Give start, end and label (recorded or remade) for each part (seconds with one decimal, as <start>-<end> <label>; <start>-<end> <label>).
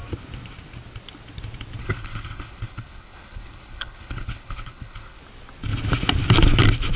0.0-1.8 recorded; 1.8-5.2 remade; 5.2-7.0 recorded